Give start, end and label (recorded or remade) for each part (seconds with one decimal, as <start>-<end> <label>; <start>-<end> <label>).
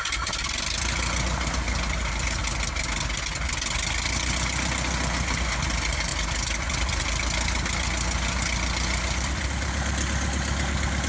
0.0-11.1 recorded